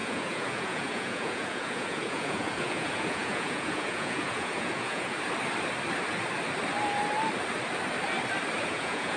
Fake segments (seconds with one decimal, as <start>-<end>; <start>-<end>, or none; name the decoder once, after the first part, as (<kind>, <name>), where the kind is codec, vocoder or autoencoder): 0.0-5.1 (vocoder, Vocos); 8.7-9.2